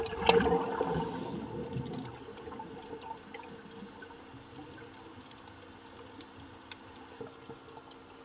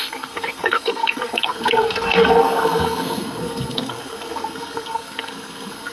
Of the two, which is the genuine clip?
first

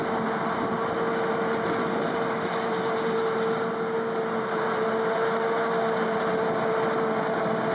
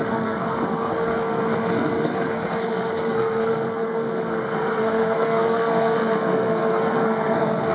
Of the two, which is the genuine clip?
first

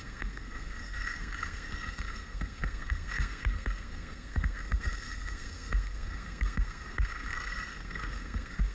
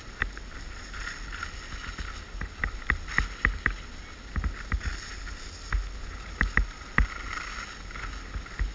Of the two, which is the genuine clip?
second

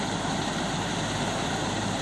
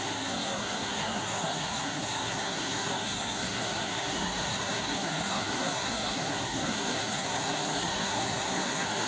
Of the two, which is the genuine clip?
first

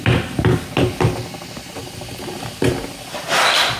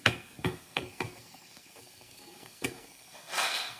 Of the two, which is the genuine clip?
first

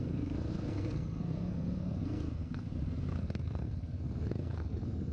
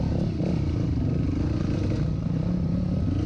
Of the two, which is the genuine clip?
second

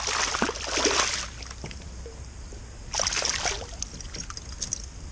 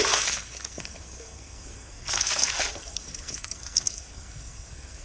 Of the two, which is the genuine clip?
first